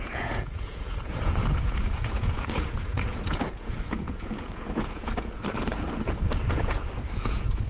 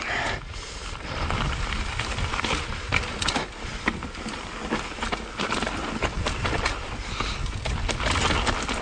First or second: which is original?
second